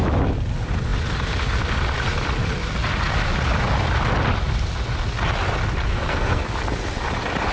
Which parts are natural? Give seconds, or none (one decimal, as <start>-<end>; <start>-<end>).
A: 0.0-5.9; 6.5-7.5